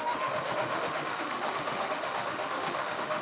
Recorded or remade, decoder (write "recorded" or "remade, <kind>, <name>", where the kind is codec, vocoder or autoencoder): remade, autoencoder, DAC-VAE